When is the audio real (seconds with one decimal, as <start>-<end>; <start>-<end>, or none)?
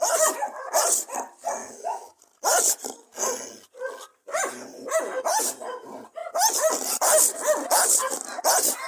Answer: 0.0-1.6; 2.2-8.9